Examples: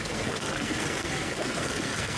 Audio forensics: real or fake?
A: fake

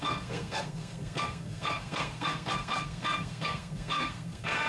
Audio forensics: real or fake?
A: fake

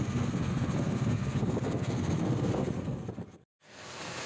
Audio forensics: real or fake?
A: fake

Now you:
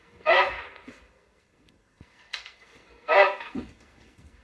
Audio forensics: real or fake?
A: fake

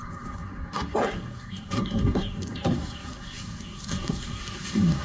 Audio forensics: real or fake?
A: fake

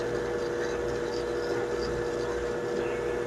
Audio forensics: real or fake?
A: real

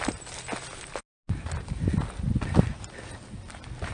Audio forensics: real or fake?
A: real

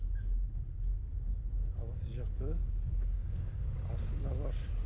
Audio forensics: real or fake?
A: real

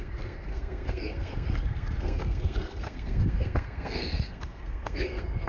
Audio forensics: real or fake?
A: fake